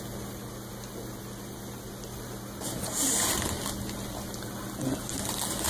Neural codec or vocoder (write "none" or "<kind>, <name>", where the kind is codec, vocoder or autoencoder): none